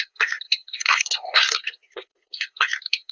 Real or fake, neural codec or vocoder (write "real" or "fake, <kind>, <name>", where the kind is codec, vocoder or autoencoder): fake, codec, SNAC